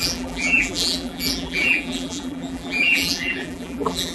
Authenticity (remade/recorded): remade